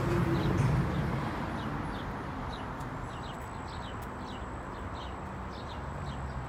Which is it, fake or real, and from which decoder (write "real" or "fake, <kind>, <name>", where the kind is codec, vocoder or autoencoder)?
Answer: real